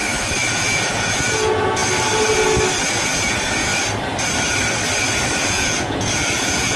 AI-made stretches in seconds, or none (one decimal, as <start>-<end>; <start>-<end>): 0.5-1.8; 2.9-3.7; 5.3-6.8